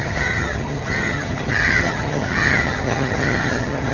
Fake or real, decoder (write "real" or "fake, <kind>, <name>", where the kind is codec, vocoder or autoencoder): fake, vocoder, HiFi-GAN